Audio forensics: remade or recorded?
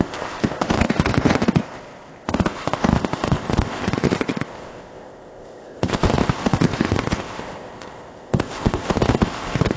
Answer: remade